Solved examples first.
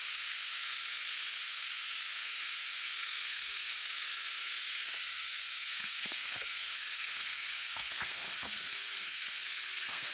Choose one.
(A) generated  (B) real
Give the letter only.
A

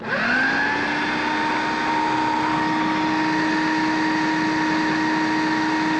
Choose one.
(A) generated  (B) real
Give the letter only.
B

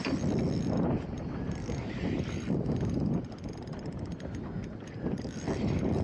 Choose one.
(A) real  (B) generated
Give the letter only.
B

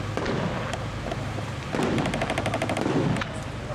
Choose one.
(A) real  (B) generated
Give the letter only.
A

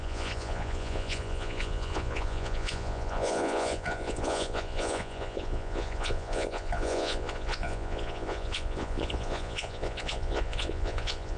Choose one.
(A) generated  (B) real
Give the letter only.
A